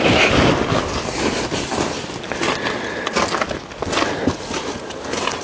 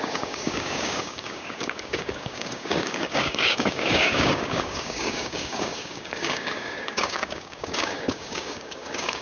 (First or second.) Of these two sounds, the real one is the first